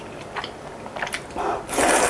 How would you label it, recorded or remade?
recorded